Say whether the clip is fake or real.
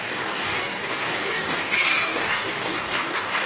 fake